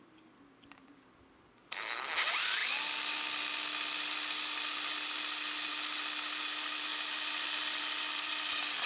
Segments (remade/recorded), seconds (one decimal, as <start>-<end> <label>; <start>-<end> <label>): 0.0-8.9 recorded